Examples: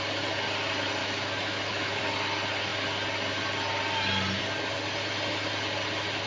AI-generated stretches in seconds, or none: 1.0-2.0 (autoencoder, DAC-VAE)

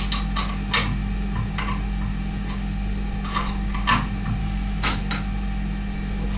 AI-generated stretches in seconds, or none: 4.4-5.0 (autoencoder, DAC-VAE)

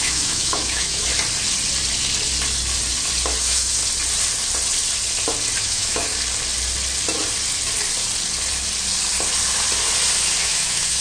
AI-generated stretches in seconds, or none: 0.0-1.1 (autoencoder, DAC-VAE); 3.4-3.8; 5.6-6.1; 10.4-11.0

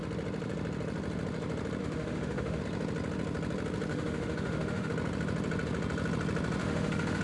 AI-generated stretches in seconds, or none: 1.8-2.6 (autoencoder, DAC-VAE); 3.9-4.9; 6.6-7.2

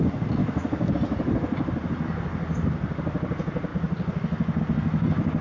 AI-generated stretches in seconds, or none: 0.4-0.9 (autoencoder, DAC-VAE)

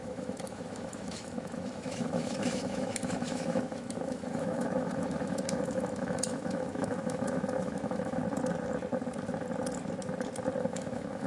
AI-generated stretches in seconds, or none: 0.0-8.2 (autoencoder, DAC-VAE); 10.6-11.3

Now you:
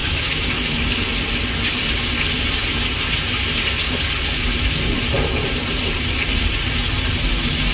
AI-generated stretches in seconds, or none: 0.0-1.0 (autoencoder, DAC-VAE)

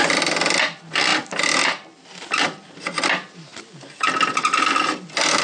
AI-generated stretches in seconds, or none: none